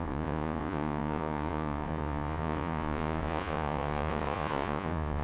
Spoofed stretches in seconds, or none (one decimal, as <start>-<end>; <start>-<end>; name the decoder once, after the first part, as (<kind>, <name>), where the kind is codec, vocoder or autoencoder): 0.0-5.2 (vocoder, Vocos)